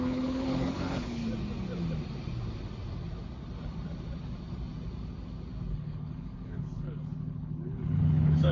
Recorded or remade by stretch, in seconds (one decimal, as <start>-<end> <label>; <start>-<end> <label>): 0.0-1.2 remade; 1.2-5.7 recorded; 5.7-8.5 remade